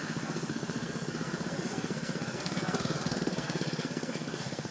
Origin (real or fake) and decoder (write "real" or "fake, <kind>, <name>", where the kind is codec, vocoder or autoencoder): fake, codec, SNAC